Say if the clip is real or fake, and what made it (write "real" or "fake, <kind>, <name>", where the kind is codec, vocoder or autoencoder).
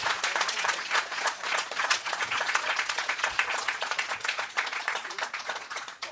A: fake, vocoder, Vocos